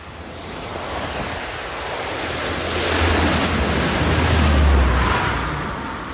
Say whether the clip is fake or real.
real